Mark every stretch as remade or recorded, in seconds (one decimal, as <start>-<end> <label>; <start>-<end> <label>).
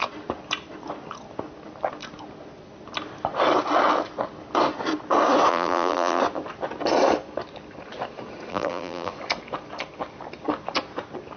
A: 0.0-5.5 recorded; 5.5-6.2 remade; 6.2-8.5 recorded; 8.5-9.1 remade; 9.1-11.4 recorded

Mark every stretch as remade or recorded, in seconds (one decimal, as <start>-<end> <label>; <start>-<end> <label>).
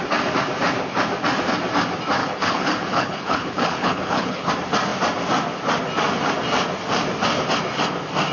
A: 0.0-2.2 recorded; 2.2-4.5 remade; 4.5-8.3 recorded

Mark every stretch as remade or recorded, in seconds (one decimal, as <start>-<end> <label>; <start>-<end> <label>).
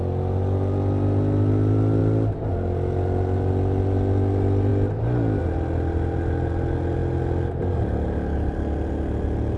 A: 0.0-9.6 recorded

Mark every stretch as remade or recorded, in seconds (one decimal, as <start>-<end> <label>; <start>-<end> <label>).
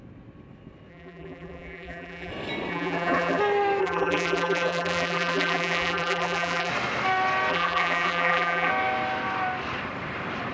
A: 0.0-0.9 recorded; 0.9-2.3 remade; 2.3-2.7 recorded; 2.7-3.4 remade; 3.4-3.8 recorded; 3.8-6.7 remade; 6.7-7.5 recorded; 7.5-8.7 remade; 8.7-10.5 recorded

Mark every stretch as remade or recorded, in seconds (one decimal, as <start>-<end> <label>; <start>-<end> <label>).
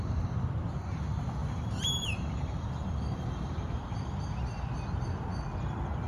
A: 0.0-1.4 recorded; 1.4-3.5 remade; 3.5-6.1 recorded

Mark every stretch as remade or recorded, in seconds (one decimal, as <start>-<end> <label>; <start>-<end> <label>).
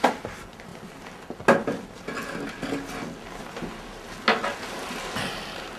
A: 0.0-5.8 recorded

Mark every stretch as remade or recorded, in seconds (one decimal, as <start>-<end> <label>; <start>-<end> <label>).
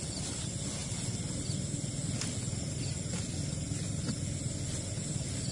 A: 0.0-5.5 recorded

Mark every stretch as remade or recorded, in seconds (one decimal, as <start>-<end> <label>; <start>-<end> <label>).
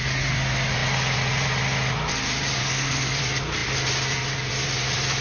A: 0.0-2.6 recorded; 2.6-3.2 remade; 3.2-5.2 recorded